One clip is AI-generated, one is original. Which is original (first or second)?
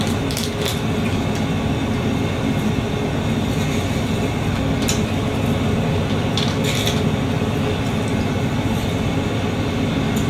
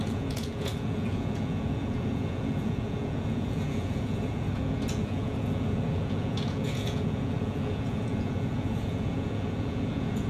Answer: first